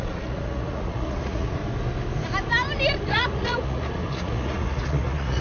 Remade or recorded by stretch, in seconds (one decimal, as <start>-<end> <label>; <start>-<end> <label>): 0.0-1.6 remade; 1.6-3.1 recorded; 3.1-5.4 remade